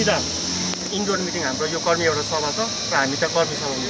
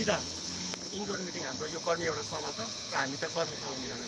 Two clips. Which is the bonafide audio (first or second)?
first